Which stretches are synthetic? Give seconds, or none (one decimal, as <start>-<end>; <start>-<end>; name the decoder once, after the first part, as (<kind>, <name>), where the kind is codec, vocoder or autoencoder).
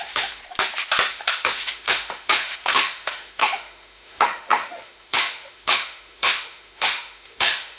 0.0-0.4 (autoencoder, DAC-VAE); 1.1-7.8